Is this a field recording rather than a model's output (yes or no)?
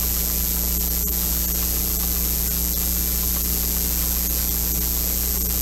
yes